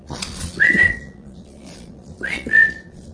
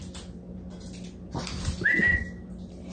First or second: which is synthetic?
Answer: first